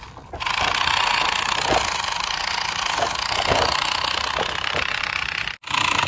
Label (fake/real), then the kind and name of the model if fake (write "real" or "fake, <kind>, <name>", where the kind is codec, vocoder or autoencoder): real